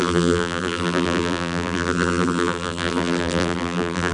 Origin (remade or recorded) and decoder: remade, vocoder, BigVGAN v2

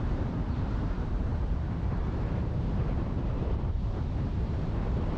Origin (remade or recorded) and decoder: remade, vocoder, BigVGAN v2